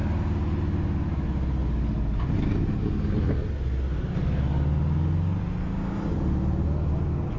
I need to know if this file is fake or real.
real